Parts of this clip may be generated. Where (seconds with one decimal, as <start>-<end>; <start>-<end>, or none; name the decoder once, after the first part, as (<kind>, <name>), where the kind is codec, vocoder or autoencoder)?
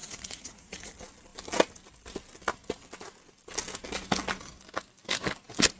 0.0-0.9 (vocoder, Vocos)